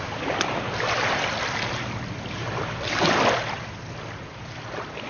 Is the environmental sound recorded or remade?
recorded